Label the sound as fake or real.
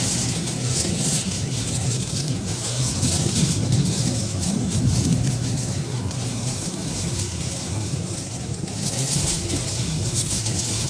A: fake